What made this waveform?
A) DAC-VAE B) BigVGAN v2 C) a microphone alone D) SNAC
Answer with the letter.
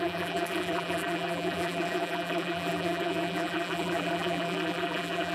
B